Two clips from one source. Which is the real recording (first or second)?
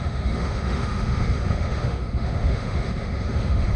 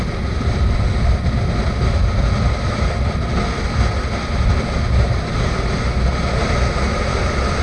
second